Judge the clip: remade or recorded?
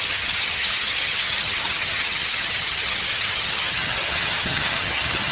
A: remade